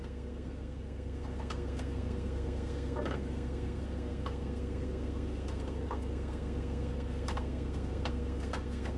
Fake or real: fake